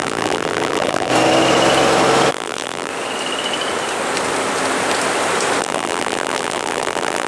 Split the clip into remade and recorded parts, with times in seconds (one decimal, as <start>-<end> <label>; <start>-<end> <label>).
0.0-1.1 remade; 1.1-2.3 recorded; 2.3-2.9 remade; 2.9-5.6 recorded; 5.6-7.3 remade